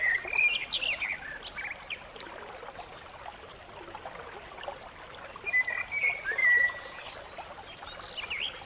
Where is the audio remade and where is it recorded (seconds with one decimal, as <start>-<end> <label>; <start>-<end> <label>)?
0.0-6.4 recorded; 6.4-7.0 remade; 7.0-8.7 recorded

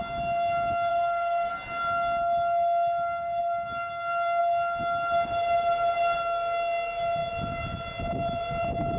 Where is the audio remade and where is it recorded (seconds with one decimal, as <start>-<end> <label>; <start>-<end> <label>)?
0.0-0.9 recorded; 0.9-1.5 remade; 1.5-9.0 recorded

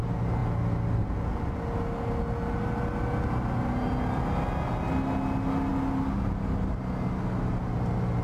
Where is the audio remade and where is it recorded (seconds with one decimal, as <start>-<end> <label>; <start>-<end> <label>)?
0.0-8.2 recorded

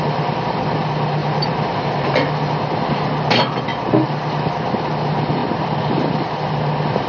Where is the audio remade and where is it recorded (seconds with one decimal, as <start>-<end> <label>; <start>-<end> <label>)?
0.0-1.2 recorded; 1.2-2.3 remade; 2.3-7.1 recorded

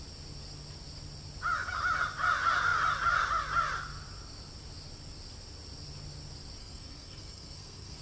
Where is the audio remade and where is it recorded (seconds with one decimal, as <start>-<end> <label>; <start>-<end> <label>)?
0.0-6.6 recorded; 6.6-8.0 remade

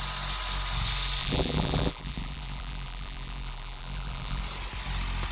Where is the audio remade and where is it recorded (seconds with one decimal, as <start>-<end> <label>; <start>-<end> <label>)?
0.0-1.2 recorded; 1.2-4.4 remade; 4.4-5.3 recorded

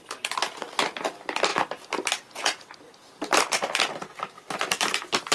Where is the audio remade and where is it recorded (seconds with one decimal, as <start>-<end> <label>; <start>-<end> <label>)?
0.0-5.3 recorded